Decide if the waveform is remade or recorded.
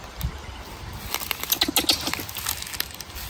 recorded